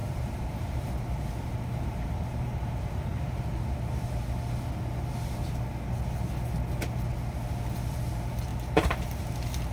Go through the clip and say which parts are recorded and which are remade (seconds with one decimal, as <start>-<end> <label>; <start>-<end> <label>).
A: 0.0-3.4 remade; 3.4-8.5 recorded; 8.5-9.2 remade; 9.2-9.7 recorded